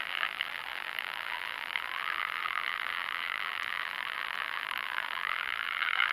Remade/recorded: remade